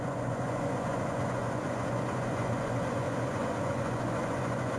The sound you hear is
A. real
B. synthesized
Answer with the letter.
B